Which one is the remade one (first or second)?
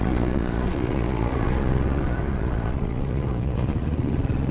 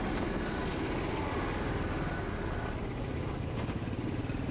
first